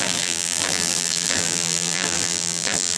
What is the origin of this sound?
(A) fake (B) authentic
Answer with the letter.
A